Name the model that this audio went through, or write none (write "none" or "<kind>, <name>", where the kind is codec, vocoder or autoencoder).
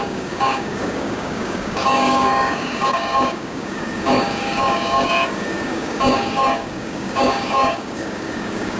codec, DAC